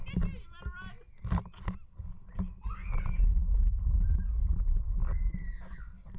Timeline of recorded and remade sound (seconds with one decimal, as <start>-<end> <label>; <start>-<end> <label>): 0.0-6.2 recorded